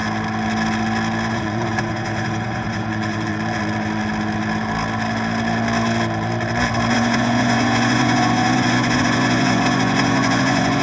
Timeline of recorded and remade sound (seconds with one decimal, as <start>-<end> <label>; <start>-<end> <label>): 0.0-1.3 recorded; 1.3-3.3 remade; 3.3-6.9 recorded; 6.9-10.8 remade